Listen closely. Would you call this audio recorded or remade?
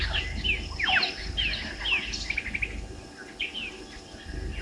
recorded